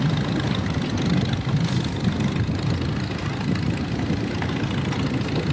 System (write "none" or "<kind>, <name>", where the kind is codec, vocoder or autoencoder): none